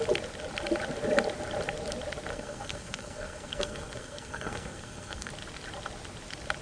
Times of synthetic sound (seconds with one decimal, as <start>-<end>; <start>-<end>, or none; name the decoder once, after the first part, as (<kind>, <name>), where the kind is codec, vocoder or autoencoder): 2.3-5.3 (codec, SNAC)